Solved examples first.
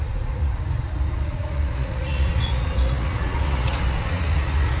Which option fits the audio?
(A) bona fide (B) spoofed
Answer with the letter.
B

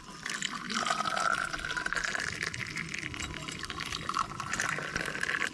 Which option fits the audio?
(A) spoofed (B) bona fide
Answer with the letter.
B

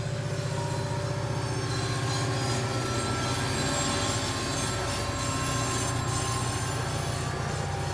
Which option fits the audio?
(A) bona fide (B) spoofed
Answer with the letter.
A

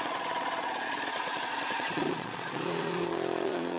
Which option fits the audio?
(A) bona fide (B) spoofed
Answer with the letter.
B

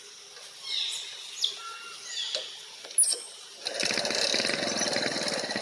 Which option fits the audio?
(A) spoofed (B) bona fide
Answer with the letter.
B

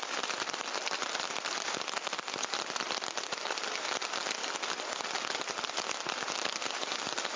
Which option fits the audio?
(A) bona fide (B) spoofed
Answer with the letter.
A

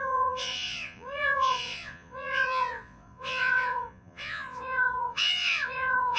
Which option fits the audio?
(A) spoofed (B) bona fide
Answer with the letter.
A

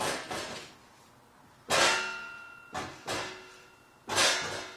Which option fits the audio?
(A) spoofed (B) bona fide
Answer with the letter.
B